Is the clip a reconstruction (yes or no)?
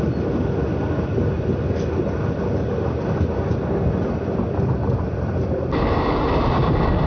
no